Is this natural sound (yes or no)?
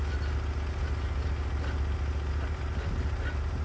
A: yes